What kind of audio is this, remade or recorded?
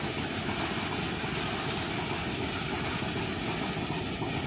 recorded